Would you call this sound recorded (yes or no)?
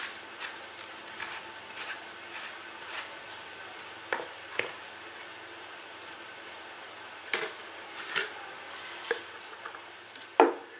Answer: yes